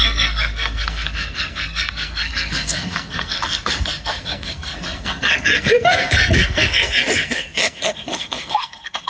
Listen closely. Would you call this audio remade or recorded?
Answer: remade